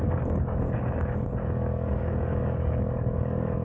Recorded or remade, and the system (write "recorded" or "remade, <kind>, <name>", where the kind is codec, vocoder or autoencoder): remade, codec, DAC